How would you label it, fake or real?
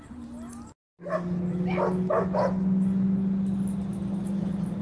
real